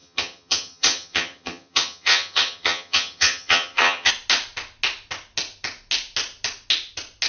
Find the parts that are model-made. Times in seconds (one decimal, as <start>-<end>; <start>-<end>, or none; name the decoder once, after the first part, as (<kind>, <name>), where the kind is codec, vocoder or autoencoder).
0.0-4.1 (vocoder, HiFi-GAN)